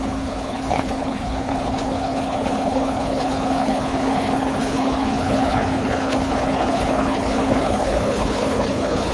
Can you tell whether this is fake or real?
fake